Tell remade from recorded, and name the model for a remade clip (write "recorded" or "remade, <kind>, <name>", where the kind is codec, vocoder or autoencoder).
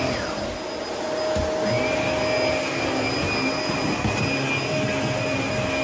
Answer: recorded